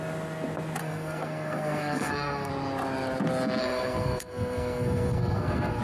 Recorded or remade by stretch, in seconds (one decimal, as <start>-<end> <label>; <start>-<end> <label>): 0.0-0.8 recorded; 0.8-2.5 remade; 2.5-3.6 recorded; 3.6-5.8 remade